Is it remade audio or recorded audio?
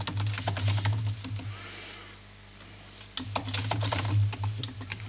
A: recorded